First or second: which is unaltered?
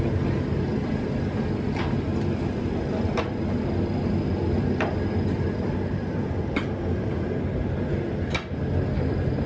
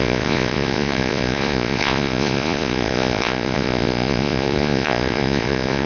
first